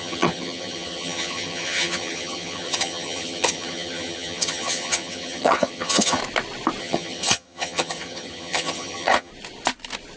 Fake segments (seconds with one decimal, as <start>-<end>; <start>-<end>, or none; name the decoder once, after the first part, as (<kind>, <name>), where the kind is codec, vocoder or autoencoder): 0.0-6.2 (vocoder, HiFi-GAN); 6.8-9.3